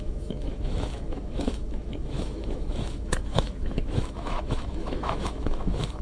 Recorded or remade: remade